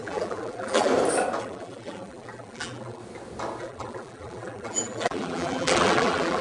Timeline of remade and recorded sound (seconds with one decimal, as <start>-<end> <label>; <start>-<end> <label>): 0.0-0.9 remade; 0.9-1.4 recorded; 1.4-3.0 remade; 3.0-3.6 recorded; 3.6-6.4 remade